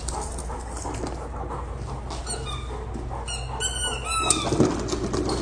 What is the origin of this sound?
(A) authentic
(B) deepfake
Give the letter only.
A